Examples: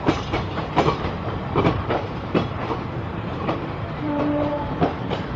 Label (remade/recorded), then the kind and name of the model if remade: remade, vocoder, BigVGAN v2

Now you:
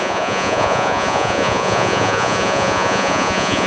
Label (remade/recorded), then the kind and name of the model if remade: remade, vocoder, Vocos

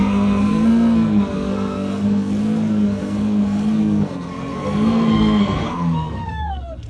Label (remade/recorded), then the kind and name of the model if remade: remade, codec, SNAC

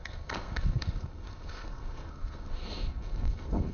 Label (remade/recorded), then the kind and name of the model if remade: remade, codec, SNAC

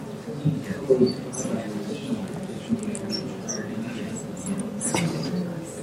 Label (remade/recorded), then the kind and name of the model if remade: recorded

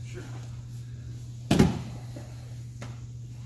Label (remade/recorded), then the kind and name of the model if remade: recorded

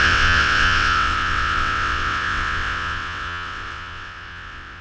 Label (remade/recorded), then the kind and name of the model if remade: remade, vocoder, WaveNeXt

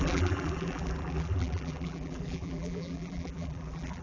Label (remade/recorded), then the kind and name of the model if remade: remade, vocoder, BigVGAN v2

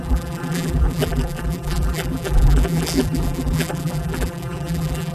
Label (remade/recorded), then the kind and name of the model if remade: remade, vocoder, BigVGAN v2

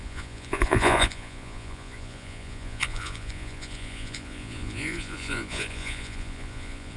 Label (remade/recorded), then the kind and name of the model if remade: remade, vocoder, Vocos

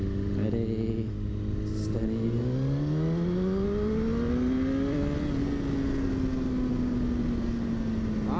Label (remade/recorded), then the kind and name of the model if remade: recorded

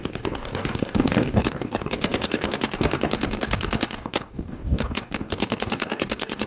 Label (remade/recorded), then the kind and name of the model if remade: remade, codec, DAC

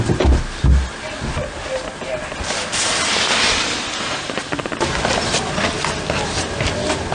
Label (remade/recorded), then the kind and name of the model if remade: recorded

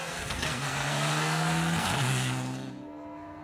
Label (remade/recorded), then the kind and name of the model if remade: remade, codec, SNAC